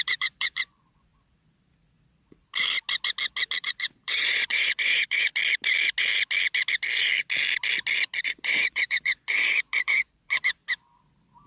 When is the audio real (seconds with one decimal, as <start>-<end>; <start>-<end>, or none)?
1.1-3.6; 5.3-8.2; 10.6-11.5

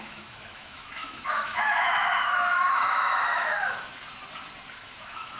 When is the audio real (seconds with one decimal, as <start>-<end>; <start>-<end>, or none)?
3.9-4.7

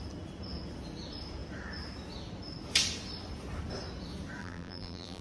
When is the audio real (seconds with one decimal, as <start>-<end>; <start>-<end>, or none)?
0.0-4.4

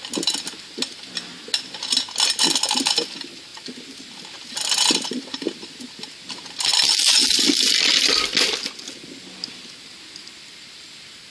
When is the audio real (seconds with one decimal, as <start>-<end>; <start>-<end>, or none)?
0.0-11.3

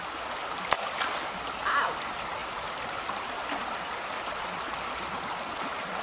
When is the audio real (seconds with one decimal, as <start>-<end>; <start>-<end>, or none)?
0.0-6.0

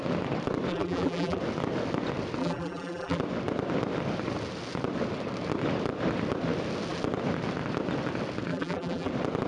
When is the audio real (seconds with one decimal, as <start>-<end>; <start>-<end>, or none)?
0.0-0.7; 1.4-2.4; 3.2-8.5; 9.1-9.5

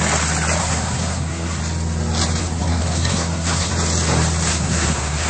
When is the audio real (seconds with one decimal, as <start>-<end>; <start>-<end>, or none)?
0.0-0.6; 1.6-2.4; 3.7-4.5

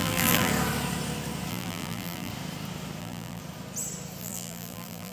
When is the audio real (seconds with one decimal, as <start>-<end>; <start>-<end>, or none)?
0.5-1.5; 2.3-3.0; 3.4-4.2